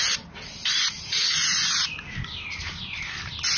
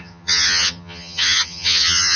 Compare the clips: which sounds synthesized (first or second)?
second